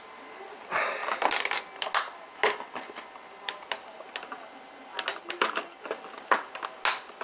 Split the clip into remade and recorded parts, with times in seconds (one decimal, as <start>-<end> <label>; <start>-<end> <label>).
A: 0.0-7.2 recorded